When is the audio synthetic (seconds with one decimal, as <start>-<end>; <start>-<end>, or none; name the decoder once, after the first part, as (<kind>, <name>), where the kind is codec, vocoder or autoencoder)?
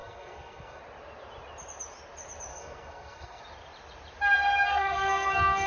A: 0.0-0.8 (codec, SNAC); 2.5-3.4; 4.7-5.7